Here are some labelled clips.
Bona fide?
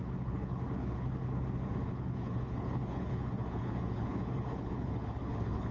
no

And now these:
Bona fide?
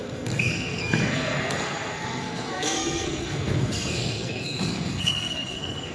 no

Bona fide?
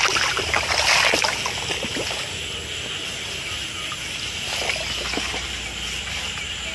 yes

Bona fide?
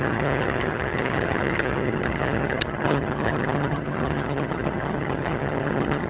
no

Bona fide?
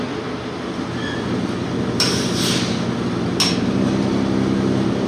yes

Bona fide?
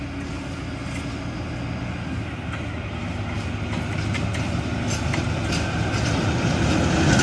yes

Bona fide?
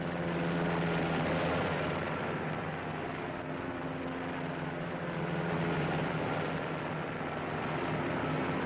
yes